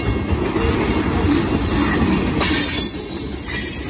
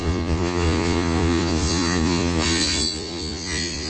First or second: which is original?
first